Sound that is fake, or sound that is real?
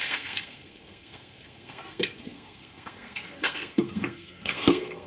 fake